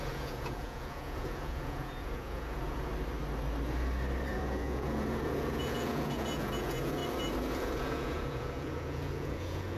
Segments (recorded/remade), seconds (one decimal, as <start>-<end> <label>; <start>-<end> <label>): 0.0-2.9 remade; 2.9-4.3 recorded; 4.3-7.0 remade; 7.0-7.6 recorded; 7.6-9.8 remade